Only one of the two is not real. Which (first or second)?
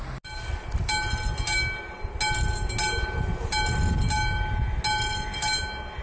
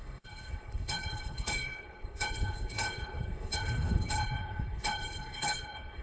second